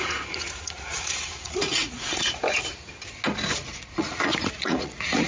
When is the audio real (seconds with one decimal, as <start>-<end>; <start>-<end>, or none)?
2.4-3.5